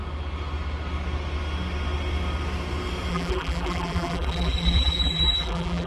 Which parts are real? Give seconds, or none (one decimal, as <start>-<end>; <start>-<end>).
0.0-3.1